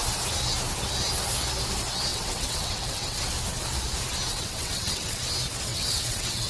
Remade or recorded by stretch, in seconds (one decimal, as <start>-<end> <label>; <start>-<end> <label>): 0.0-2.1 recorded; 2.1-3.2 remade; 3.2-4.3 recorded; 4.3-5.2 remade; 5.2-5.7 recorded; 5.7-6.5 remade